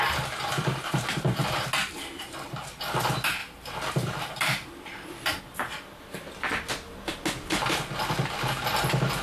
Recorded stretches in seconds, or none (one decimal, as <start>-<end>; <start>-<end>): 0.0-0.9; 1.7-3.4; 5.4-9.2